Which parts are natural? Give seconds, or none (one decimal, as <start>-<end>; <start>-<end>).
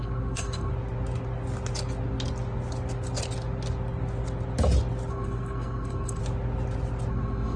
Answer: 0.7-5.1; 6.2-7.1